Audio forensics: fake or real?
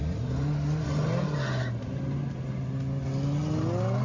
real